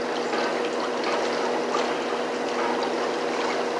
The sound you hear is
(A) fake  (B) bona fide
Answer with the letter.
B